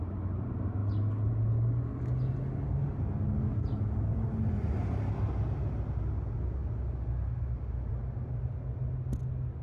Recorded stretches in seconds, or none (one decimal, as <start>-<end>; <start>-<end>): 0.0-9.6